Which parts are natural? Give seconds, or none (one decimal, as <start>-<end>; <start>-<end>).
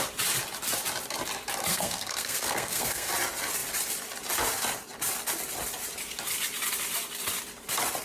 0.0-1.7; 3.1-8.0